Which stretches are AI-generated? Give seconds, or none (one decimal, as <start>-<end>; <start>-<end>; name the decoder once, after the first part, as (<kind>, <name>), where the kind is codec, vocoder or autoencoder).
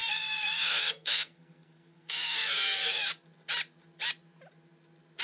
0.0-3.1 (codec, SNAC)